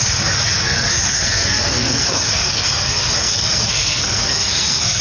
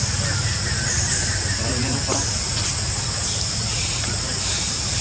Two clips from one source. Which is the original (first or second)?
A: second